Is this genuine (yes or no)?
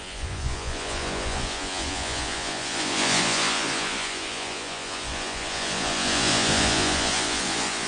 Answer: no